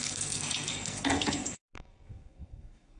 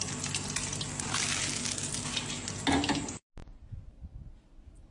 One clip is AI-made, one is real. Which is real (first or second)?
second